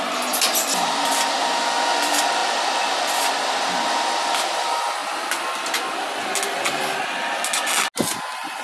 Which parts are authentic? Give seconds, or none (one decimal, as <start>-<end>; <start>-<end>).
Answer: 0.0-8.6